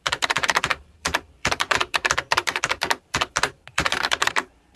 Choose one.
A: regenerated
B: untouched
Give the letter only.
A